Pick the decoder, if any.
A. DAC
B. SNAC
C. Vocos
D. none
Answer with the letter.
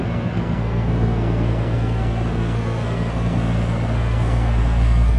B